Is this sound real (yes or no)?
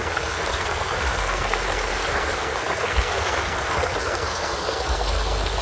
no